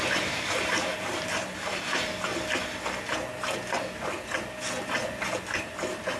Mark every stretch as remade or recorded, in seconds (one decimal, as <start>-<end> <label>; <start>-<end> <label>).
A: 0.0-2.3 remade; 2.3-5.6 recorded; 5.6-6.2 remade